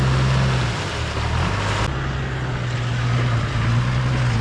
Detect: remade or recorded recorded